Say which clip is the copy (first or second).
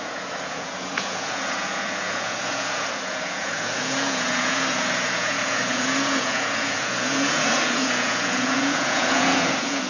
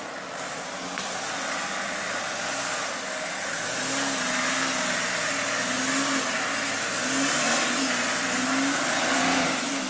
first